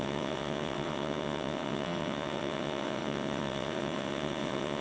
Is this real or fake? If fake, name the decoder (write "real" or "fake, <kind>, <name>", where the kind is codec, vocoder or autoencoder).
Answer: fake, vocoder, WaveNeXt